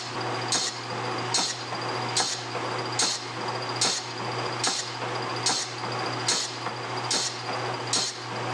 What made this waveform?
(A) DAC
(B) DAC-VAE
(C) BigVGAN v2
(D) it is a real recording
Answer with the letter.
D